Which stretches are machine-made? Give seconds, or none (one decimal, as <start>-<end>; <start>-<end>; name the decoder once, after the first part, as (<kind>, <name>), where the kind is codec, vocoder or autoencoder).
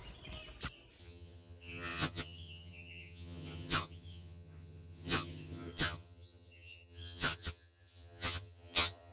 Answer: 1.0-9.1 (vocoder, HiFi-GAN)